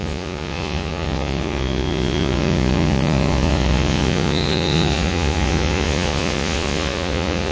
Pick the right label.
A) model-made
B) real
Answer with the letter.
A